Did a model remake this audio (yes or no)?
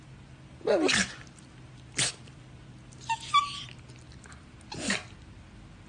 no